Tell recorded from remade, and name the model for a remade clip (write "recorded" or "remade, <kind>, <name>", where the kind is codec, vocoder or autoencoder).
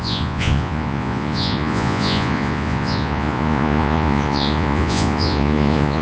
remade, vocoder, Vocos